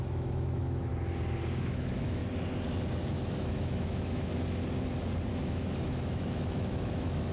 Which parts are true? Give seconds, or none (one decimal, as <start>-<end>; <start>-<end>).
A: 0.9-1.6; 2.2-3.1; 4.3-5.3